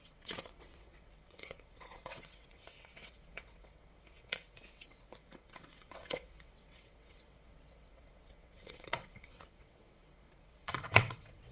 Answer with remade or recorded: remade